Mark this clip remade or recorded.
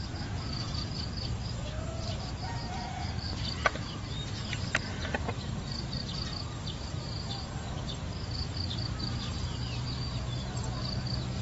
recorded